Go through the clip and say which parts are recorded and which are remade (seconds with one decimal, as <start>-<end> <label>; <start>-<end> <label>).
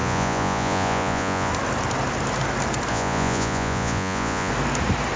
0.0-1.5 remade; 1.5-2.9 recorded; 2.9-4.5 remade; 4.5-5.2 recorded